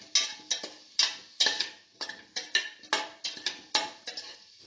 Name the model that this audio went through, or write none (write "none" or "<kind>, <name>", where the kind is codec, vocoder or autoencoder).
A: none